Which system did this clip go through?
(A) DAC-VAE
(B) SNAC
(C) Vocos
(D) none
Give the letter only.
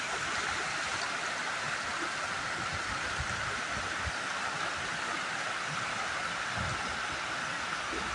D